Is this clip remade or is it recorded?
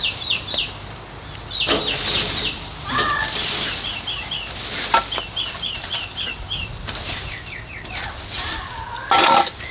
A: recorded